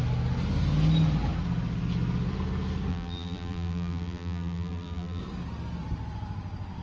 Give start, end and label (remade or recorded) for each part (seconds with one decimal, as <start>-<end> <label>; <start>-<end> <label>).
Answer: 0.0-2.9 recorded; 2.9-5.2 remade; 5.2-6.8 recorded